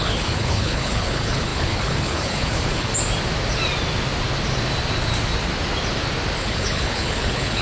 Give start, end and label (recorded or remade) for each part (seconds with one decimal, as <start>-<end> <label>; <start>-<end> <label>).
0.0-2.9 remade; 2.9-6.4 recorded; 6.4-7.6 remade